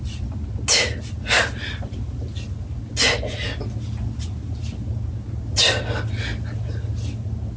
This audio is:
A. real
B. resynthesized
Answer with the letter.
A